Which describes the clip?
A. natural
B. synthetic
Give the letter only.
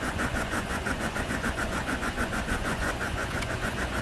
B